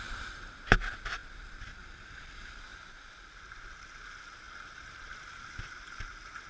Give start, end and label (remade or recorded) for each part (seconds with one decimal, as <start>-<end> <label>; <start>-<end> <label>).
0.0-6.5 recorded